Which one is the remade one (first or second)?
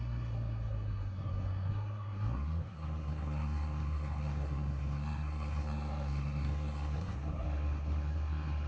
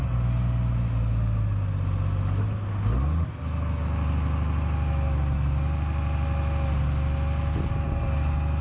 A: first